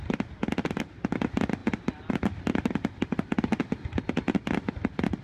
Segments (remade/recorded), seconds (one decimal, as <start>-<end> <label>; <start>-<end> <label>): 0.0-0.4 remade; 0.4-0.9 recorded; 0.9-1.6 remade; 1.6-4.7 recorded; 4.7-5.2 remade

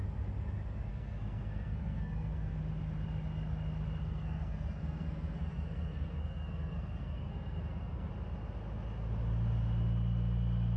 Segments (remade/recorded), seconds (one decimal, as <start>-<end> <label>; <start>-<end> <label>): 0.0-0.9 recorded; 0.9-2.6 remade; 2.6-4.0 recorded; 4.0-8.1 remade; 8.1-10.8 recorded

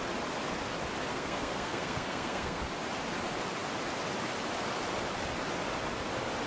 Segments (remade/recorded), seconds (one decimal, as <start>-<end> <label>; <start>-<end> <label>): 0.0-1.1 recorded; 1.1-2.6 remade; 2.6-6.5 recorded